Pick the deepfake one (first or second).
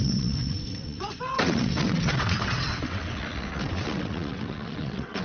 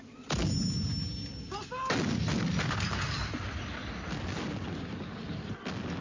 first